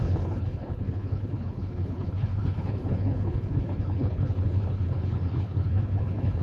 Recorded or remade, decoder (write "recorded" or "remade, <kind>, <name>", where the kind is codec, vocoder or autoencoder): remade, codec, HILCodec